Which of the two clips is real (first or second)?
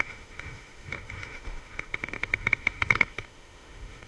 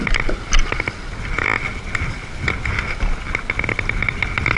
second